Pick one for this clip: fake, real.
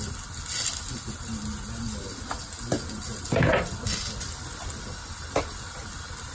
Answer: real